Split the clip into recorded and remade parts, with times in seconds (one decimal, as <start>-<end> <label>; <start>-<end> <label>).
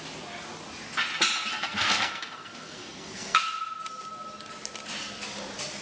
0.0-1.5 recorded; 1.5-3.4 remade; 3.4-5.8 recorded